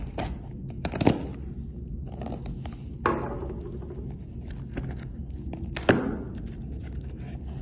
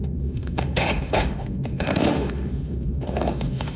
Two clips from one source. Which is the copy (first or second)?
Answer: second